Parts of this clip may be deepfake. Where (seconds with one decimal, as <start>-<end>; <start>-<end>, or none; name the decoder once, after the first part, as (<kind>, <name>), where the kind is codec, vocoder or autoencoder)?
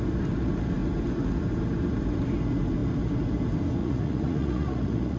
3.8-5.2 (vocoder, Vocos)